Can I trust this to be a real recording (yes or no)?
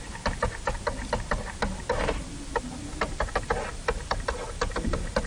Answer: yes